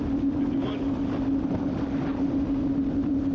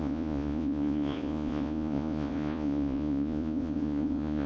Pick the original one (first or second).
first